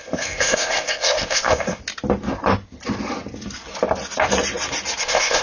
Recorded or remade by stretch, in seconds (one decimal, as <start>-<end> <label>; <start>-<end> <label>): 0.0-1.8 remade; 1.8-5.0 recorded; 5.0-5.4 remade